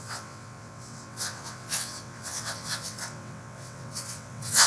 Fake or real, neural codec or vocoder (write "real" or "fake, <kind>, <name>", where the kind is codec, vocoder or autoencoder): fake, vocoder, WaveNeXt